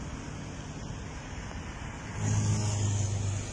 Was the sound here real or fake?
real